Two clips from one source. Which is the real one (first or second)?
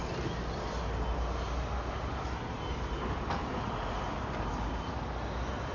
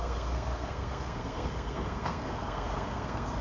first